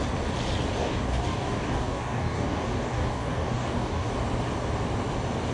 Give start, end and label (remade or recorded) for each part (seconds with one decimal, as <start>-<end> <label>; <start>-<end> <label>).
0.0-0.8 recorded; 0.8-4.1 remade; 4.1-5.5 recorded